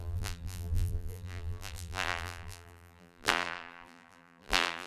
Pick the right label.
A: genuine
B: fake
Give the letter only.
B